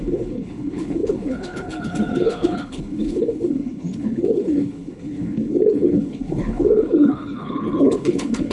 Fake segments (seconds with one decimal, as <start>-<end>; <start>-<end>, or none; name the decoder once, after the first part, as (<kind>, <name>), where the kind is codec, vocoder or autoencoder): 0.0-8.5 (codec, HILCodec)